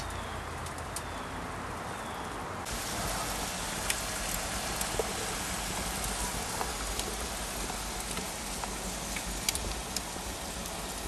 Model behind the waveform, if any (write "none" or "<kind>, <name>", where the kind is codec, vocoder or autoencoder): none